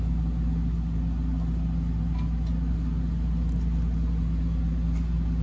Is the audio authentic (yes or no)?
yes